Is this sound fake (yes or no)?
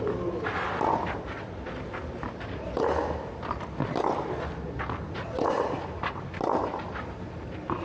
no